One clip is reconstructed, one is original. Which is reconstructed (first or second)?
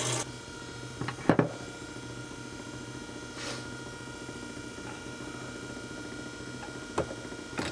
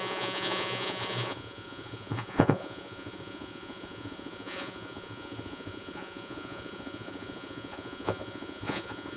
second